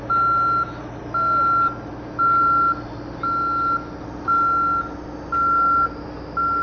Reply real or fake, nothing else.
real